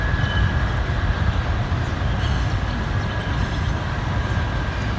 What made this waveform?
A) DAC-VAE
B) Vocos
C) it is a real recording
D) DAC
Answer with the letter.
C